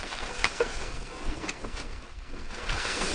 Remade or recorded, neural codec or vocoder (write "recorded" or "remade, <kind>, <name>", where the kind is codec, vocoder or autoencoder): remade, codec, SNAC